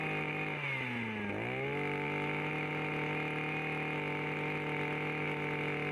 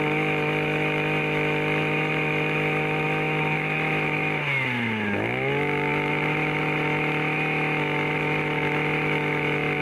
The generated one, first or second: second